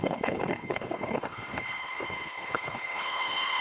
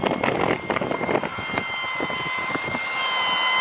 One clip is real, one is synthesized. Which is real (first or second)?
second